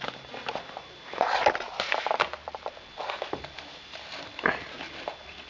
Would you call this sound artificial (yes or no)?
no